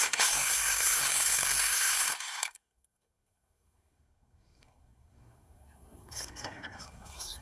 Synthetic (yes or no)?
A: yes